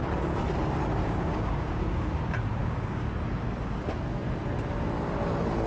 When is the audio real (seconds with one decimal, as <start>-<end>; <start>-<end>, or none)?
0.0-1.0; 2.1-2.6; 3.1-5.7